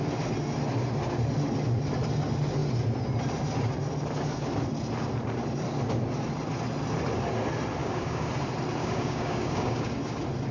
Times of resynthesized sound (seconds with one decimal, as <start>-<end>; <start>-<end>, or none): 7.8-8.3; 8.8-9.9